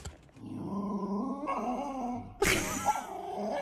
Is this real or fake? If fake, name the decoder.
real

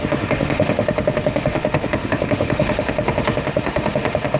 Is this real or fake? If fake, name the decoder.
fake, autoencoder, DAC-VAE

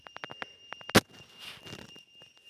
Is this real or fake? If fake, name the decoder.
real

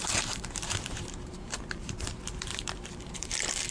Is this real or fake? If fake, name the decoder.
fake, vocoder, BigVGAN v2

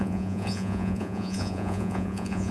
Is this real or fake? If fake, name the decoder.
fake, vocoder, Vocos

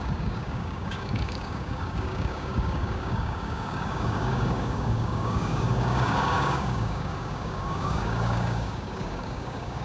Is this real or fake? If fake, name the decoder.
fake, codec, DAC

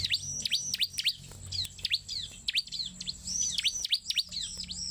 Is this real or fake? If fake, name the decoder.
real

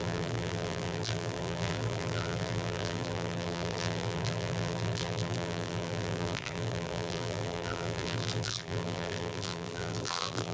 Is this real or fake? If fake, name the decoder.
fake, vocoder, BigVGAN v2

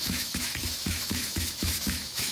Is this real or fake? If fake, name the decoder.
fake, autoencoder, DAC-VAE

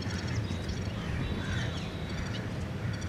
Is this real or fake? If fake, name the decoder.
fake, vocoder, BigVGAN v2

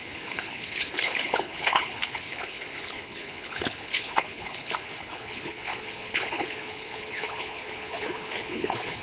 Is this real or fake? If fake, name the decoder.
fake, codec, HILCodec